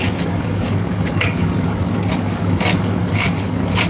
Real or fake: fake